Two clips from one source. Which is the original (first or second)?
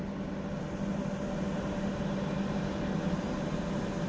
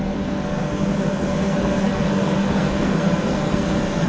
first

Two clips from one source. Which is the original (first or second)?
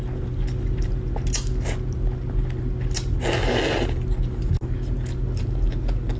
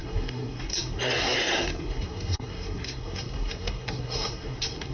first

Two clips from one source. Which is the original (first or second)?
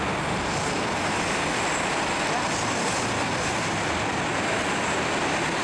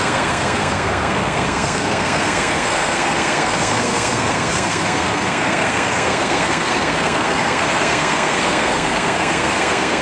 first